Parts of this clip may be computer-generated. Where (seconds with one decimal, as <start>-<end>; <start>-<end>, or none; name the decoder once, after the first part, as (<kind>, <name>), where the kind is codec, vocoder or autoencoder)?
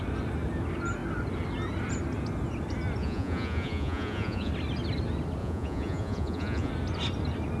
3.0-4.5 (vocoder, Vocos); 5.4-6.7